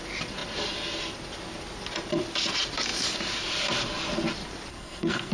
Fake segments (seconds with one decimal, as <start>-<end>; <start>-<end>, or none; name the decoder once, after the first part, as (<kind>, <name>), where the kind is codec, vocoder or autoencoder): 4.7-5.3 (codec, SNAC)